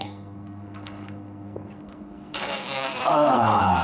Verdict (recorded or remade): remade